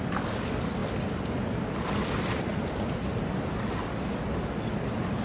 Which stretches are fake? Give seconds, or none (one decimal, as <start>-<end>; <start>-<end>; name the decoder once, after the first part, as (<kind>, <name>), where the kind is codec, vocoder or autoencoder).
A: none